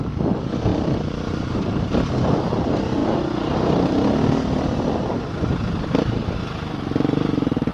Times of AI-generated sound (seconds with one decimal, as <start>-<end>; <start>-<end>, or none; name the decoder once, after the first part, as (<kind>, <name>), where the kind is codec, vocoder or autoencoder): 0.7-1.8 (vocoder, BigVGAN v2)